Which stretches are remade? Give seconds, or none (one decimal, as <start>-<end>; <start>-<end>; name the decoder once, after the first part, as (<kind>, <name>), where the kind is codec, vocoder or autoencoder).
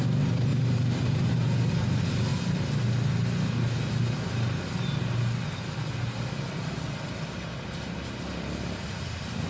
none